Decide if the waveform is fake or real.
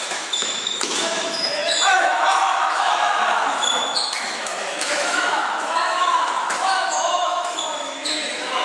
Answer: fake